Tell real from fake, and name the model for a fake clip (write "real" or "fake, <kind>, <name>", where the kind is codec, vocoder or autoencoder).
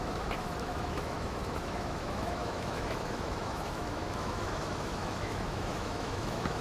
fake, autoencoder, DAC-VAE